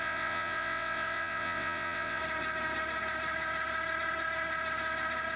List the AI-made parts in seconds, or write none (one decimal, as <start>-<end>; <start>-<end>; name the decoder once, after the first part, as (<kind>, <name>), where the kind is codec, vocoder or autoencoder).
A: 0.0-2.2 (vocoder, WaveNeXt)